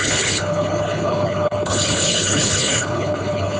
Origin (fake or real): fake